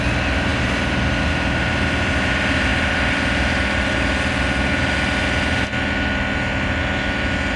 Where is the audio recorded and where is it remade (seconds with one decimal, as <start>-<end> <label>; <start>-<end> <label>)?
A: 0.0-7.6 recorded